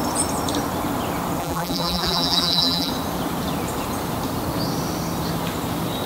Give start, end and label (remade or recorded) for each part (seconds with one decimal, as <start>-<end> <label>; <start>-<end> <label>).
0.0-1.4 recorded; 1.4-2.9 remade; 2.9-6.1 recorded